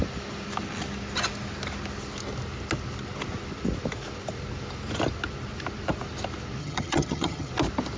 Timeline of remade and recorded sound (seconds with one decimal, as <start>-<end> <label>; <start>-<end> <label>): 0.0-6.6 recorded; 6.6-7.5 remade; 7.5-8.0 recorded